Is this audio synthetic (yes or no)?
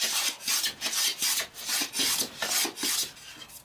no